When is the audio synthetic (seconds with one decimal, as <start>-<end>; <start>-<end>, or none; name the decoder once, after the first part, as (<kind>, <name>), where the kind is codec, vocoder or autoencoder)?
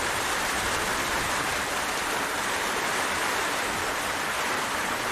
0.0-5.1 (vocoder, BigVGAN v2)